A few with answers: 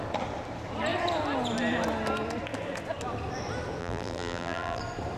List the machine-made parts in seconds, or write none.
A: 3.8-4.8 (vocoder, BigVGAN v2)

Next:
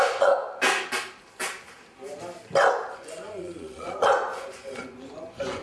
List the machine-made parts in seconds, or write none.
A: 0.0-0.4 (vocoder, Vocos); 2.9-5.6